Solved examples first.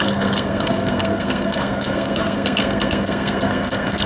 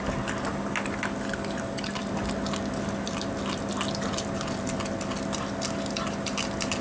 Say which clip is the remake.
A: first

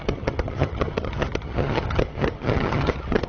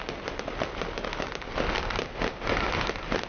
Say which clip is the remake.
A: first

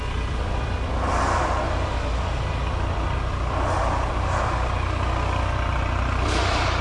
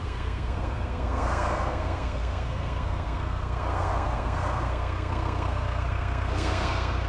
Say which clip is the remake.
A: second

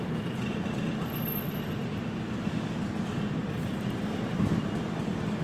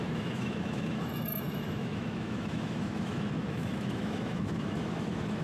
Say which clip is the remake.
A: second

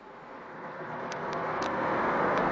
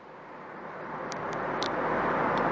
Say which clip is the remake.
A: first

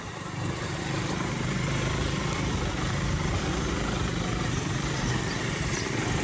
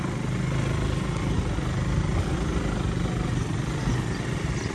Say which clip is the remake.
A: first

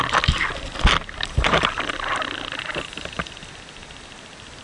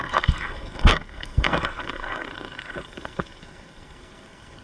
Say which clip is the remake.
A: second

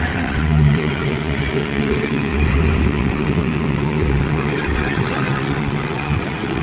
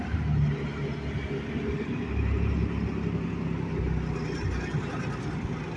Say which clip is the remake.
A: first